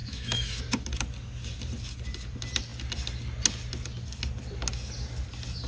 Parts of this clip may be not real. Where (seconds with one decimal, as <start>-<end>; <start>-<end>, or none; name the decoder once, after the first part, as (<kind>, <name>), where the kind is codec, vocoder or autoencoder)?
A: 0.0-0.6 (autoencoder, DAC-VAE)